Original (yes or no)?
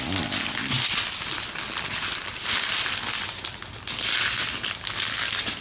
yes